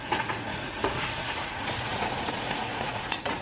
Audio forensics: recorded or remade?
remade